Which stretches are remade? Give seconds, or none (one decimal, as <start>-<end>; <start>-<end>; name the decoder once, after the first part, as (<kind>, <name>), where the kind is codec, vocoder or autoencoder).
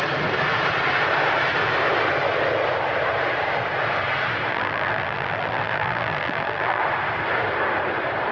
4.5-6.8 (vocoder, BigVGAN v2)